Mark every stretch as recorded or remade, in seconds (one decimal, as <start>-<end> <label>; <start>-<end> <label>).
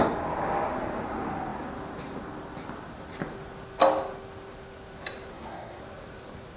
0.0-5.3 recorded; 5.3-5.8 remade; 5.8-6.6 recorded